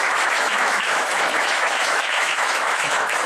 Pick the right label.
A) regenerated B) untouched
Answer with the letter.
A